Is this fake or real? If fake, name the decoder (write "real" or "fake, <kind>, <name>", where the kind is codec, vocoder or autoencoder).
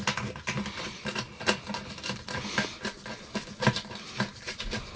real